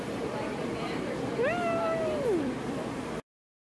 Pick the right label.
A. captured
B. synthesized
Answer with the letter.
B